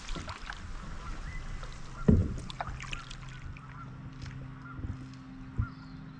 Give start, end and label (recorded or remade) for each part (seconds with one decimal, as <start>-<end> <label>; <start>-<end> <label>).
0.0-6.2 recorded